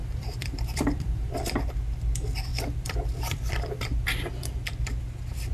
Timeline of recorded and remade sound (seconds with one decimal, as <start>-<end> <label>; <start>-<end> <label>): 0.0-1.3 remade; 1.3-2.5 recorded; 2.5-4.7 remade; 4.7-5.5 recorded